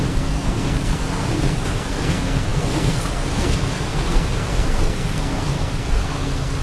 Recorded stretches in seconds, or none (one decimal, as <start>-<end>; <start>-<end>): none